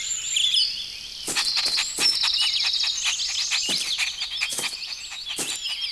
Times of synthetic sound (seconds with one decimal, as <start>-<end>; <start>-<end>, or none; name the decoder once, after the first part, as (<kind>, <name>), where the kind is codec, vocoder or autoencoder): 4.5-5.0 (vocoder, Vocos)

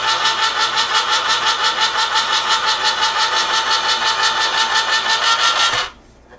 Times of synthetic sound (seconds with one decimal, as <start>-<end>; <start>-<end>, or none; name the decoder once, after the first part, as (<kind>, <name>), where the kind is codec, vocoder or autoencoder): 0.5-3.3 (vocoder, Vocos)

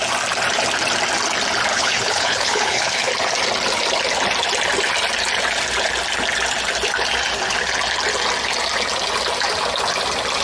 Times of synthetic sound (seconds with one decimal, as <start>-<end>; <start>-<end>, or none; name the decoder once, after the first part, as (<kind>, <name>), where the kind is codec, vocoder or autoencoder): 1.7-3.1 (codec, HILCodec)